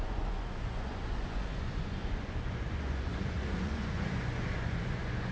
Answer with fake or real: fake